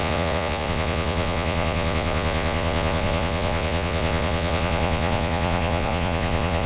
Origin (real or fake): fake